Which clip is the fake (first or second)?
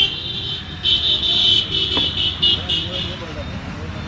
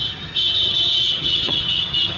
second